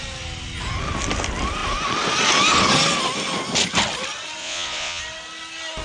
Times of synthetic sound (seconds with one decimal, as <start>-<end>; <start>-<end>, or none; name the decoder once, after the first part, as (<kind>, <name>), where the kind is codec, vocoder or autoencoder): 4.4-5.0 (vocoder, Vocos)